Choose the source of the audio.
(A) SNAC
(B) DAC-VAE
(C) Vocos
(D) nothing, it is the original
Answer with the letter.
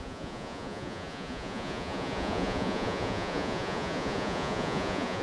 C